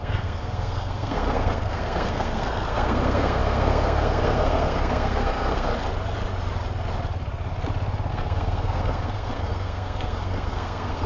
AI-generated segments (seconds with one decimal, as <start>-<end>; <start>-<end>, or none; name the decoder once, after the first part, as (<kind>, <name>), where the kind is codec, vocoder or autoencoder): 0.0-5.7 (codec, SNAC); 8.1-11.1